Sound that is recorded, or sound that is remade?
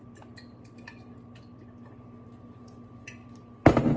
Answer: recorded